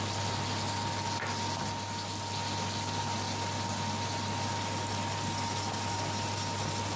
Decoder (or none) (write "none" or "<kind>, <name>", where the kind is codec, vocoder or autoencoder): none